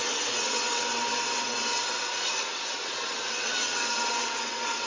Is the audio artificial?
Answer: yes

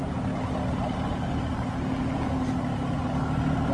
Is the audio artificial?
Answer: no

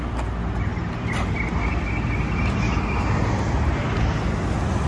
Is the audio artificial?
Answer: no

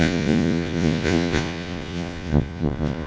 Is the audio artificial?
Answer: yes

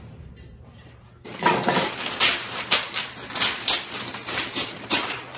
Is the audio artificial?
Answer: yes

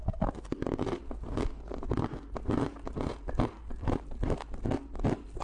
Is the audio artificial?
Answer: no